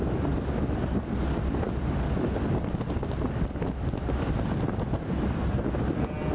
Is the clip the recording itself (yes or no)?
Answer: yes